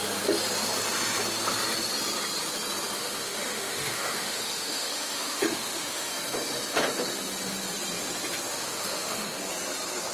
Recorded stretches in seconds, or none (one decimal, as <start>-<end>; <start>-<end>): 0.0-3.0; 6.1-8.5; 9.4-10.1